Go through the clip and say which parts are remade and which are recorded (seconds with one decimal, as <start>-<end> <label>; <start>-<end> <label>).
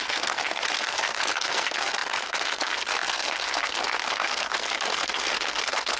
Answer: 0.0-6.0 remade